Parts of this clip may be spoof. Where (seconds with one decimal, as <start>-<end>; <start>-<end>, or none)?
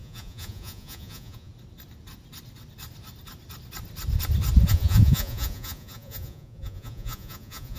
0.0-1.5; 4.7-7.8